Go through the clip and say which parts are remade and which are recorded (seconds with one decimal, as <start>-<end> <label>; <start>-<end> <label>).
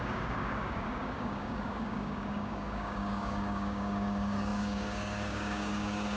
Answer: 0.0-6.2 remade